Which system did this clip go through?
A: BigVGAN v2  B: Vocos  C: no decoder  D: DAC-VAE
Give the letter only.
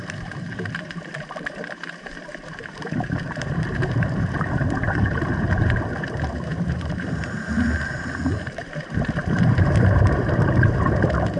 A